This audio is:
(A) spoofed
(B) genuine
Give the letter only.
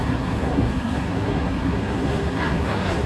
A